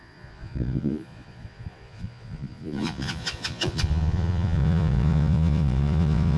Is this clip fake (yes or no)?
yes